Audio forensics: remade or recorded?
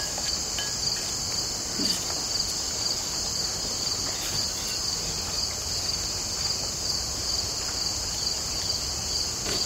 recorded